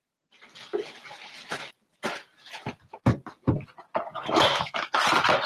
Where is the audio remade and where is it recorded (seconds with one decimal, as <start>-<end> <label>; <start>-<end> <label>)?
0.0-4.1 recorded; 4.1-4.9 remade; 4.9-5.5 recorded